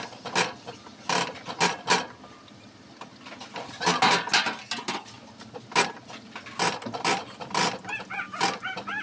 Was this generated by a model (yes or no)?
no